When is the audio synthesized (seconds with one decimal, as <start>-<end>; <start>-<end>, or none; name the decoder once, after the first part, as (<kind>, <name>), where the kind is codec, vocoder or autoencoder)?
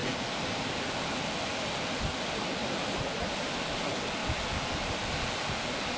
none